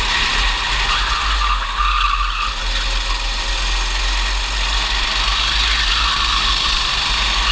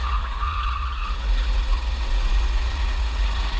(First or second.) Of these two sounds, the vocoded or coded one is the second